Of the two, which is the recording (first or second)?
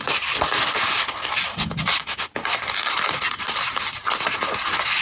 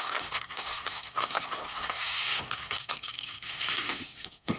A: first